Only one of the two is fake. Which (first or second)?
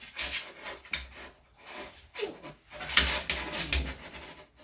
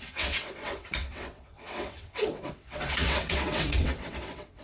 second